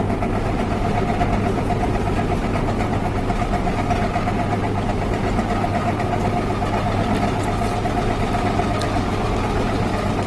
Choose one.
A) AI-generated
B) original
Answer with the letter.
B